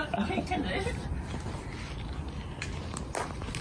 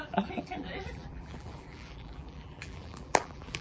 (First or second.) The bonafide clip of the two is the first